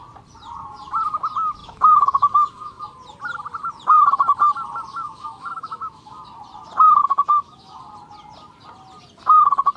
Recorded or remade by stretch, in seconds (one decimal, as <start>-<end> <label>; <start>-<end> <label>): 0.0-1.6 recorded; 1.6-2.8 remade; 2.8-4.9 recorded; 4.9-6.2 remade; 6.2-7.0 recorded; 7.0-7.8 remade; 7.8-9.8 recorded